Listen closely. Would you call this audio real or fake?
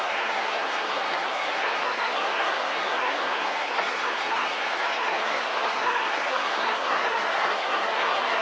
fake